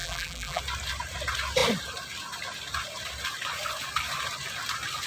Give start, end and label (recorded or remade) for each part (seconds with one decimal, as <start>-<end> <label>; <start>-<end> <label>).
0.0-0.6 remade; 0.6-5.1 recorded